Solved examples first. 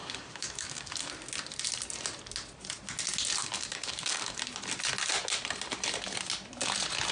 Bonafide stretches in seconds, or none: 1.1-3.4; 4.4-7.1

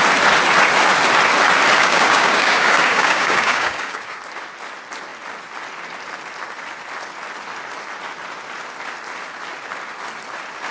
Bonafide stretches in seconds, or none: 0.0-1.8; 4.2-10.7

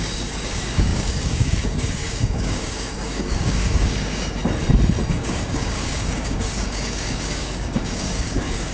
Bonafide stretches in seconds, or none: 4.4-5.1